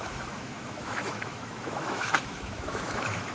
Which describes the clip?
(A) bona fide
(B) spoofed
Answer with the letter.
B